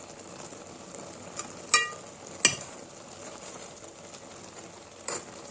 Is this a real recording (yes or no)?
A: yes